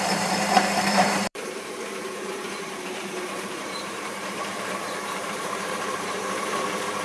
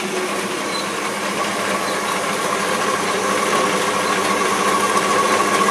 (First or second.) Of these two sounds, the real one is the second